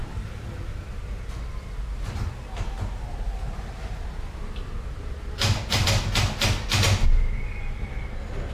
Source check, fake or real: real